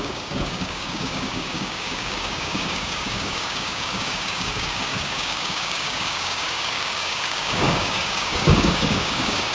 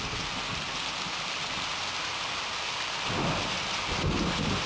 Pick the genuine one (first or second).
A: second